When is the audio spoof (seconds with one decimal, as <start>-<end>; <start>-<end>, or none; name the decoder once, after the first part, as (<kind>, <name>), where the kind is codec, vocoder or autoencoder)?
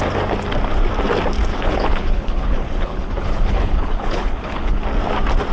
1.5-4.8 (codec, HILCodec)